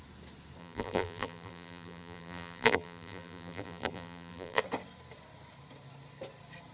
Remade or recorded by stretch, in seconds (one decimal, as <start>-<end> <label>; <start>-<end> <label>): 0.0-0.6 recorded; 0.6-4.6 remade; 4.6-6.7 recorded